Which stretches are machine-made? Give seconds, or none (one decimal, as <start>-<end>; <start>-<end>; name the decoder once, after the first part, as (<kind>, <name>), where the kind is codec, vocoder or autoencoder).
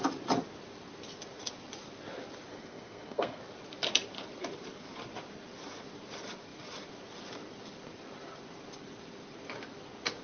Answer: 2.5-3.4 (codec, SNAC)